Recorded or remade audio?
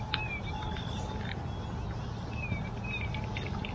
recorded